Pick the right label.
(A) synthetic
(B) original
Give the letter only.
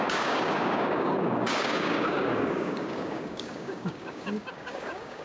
A